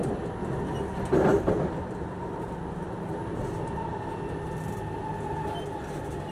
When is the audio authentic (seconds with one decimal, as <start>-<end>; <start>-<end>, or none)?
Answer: 0.0-1.3; 2.3-6.3